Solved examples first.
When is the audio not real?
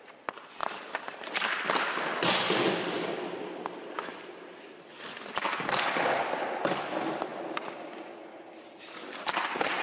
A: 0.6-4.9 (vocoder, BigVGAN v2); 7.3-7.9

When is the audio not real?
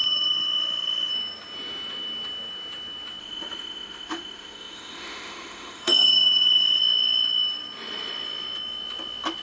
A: 0.0-1.1 (autoencoder, DAC-VAE); 3.2-6.8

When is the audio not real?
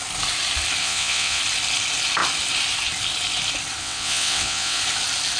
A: 0.8-1.4 (vocoder, WaveNeXt); 3.8-4.8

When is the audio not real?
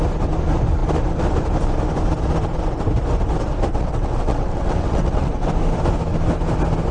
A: 3.7-5.5 (vocoder, WaveNeXt)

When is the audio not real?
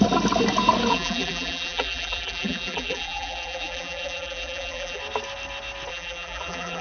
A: 0.9-5.0 (vocoder, BigVGAN v2); 5.9-6.8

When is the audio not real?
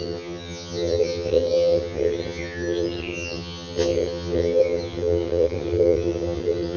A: 0.0-6.8 (vocoder, HiFi-GAN)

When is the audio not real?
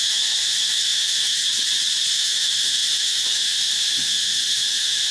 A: 0.0-1.4 (autoencoder, DAC-VAE); 2.1-5.1